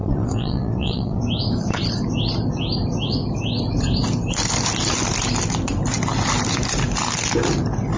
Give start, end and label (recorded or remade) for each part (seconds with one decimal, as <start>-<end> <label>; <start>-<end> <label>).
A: 0.0-1.2 remade; 1.2-8.0 recorded